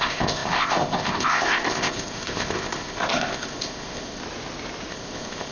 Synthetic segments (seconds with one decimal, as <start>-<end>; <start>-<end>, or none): 0.0-4.2; 4.9-5.5